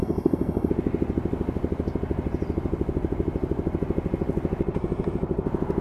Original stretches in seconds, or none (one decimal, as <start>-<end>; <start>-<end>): 0.7-5.8